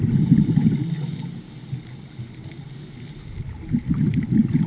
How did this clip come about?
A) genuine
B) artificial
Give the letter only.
A